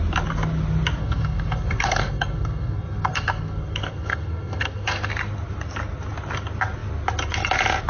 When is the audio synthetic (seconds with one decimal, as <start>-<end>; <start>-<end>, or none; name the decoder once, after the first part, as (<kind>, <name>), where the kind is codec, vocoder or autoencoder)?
1.0-5.1 (codec, SNAC)

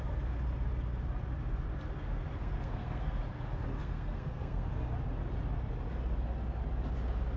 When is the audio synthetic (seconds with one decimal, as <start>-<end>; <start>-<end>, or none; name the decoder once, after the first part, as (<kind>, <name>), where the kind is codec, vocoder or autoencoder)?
2.4-3.2 (codec, SNAC); 3.8-4.7